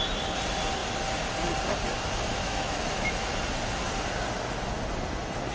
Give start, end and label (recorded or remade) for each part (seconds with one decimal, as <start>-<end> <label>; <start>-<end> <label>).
0.0-2.4 recorded; 2.4-3.3 remade; 3.3-5.5 recorded